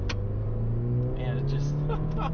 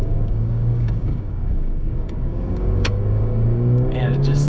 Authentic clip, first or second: first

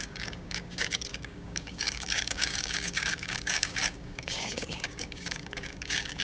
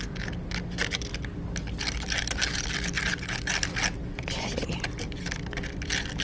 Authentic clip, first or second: second